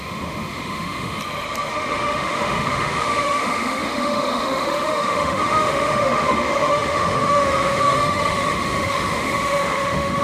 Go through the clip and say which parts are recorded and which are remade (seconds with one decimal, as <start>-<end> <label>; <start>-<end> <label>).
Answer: 0.0-1.2 remade; 1.2-1.7 recorded; 1.7-10.2 remade